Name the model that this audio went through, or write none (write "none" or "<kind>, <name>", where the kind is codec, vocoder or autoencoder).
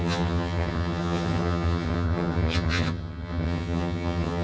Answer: vocoder, HiFi-GAN